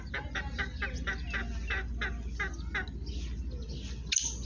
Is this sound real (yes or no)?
yes